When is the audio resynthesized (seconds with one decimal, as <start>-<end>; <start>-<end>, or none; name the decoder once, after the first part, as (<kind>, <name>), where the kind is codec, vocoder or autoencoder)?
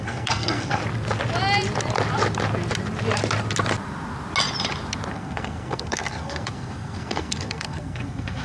0.0-0.8 (codec, SNAC); 5.1-8.4